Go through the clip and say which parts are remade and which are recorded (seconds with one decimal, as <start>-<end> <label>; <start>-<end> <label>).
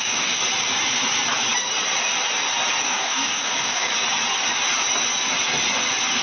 0.0-0.4 remade; 0.4-2.8 recorded; 2.8-3.9 remade; 3.9-6.2 recorded